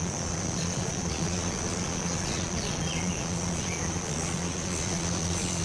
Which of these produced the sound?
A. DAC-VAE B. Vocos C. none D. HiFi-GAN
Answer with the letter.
B